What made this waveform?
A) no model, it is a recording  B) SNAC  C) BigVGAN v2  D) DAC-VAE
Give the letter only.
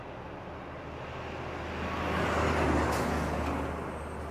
A